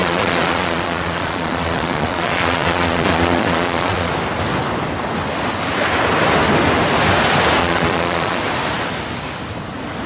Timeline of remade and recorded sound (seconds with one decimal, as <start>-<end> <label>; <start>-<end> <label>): 0.0-4.1 remade; 4.1-7.6 recorded; 7.6-8.4 remade; 8.4-10.1 recorded